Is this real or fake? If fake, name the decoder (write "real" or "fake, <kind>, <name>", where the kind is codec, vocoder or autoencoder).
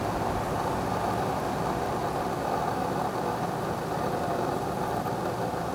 real